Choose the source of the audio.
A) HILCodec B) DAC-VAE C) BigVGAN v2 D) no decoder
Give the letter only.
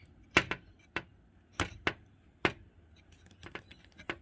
D